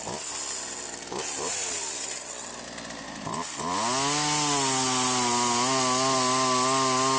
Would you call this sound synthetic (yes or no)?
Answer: no